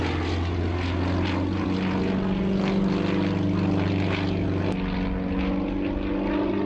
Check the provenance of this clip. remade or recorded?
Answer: recorded